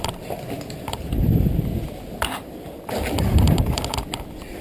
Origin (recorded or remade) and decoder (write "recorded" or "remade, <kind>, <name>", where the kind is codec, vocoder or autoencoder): remade, vocoder, BigVGAN v2